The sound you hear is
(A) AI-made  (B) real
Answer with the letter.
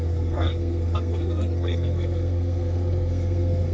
A